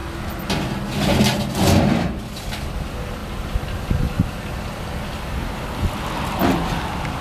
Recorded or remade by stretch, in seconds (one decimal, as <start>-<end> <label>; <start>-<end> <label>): 0.0-7.2 recorded